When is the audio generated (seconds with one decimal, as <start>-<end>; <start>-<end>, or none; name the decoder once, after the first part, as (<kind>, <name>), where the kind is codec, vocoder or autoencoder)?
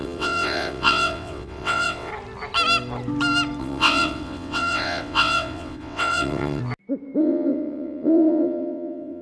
0.0-2.1 (vocoder, WaveNeXt); 3.6-6.6; 7.2-9.2